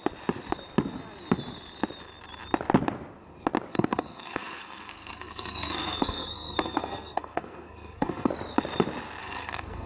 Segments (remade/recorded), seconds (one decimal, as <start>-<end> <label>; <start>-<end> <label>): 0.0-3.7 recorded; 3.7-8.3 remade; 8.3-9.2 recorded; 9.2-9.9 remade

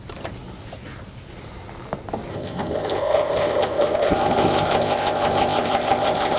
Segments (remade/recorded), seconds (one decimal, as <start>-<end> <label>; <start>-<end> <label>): 0.0-2.3 recorded; 2.3-6.4 remade

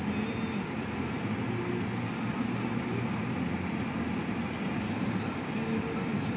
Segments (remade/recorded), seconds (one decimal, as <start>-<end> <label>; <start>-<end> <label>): 0.0-3.2 recorded; 3.2-4.2 remade; 4.2-6.4 recorded

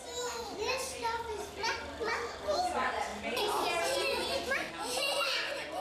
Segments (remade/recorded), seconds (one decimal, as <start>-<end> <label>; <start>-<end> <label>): 0.0-5.8 recorded